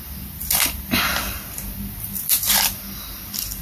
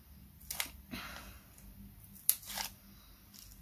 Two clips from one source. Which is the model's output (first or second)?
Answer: first